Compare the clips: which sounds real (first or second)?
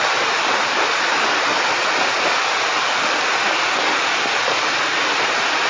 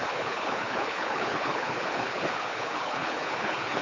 first